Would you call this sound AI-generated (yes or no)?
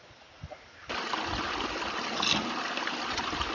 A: no